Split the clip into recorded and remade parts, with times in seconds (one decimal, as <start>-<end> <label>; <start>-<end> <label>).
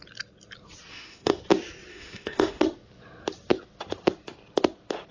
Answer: 0.0-0.9 recorded; 0.9-1.4 remade; 1.4-1.9 recorded; 1.9-2.6 remade; 2.6-5.1 recorded